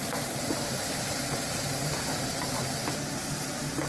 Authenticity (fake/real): fake